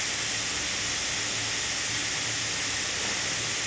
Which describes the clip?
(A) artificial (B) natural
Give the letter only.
B